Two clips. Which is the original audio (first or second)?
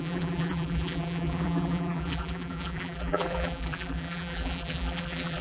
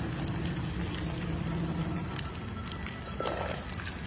second